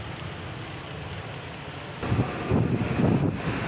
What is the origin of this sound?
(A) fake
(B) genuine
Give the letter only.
B